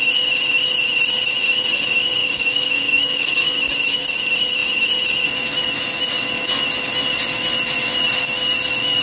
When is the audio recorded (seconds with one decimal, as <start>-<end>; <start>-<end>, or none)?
0.0-2.2; 3.3-9.0